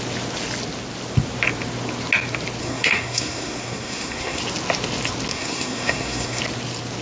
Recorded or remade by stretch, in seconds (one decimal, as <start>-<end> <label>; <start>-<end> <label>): 0.0-2.6 recorded; 2.6-4.4 remade; 4.4-5.3 recorded; 5.3-6.4 remade; 6.4-7.0 recorded